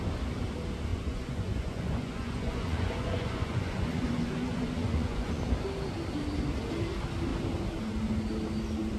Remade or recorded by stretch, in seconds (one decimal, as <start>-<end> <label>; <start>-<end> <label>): 0.0-0.9 recorded; 0.9-5.4 remade; 5.4-9.0 recorded